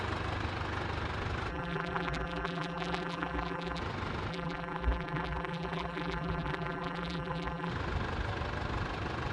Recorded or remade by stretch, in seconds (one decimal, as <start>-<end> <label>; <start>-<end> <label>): 0.0-1.5 recorded; 1.5-3.8 remade; 3.8-4.3 recorded; 4.3-7.7 remade; 7.7-9.3 recorded